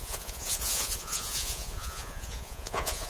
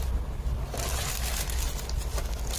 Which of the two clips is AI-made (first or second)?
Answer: first